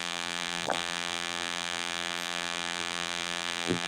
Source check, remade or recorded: remade